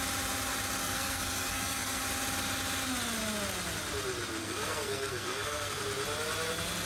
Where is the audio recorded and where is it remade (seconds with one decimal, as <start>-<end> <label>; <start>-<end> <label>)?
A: 0.0-0.8 recorded; 0.8-2.0 remade; 2.0-4.4 recorded; 4.4-5.8 remade; 5.8-6.9 recorded